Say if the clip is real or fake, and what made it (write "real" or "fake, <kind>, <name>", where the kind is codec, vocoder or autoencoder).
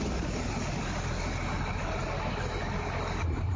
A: real